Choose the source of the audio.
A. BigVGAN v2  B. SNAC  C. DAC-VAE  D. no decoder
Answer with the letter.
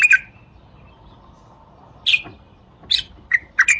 D